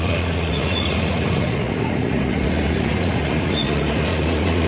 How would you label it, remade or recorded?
remade